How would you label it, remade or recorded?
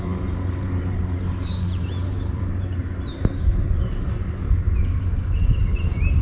remade